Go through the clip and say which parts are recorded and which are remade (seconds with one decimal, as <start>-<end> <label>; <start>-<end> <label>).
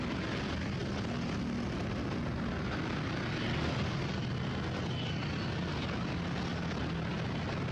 0.0-7.7 recorded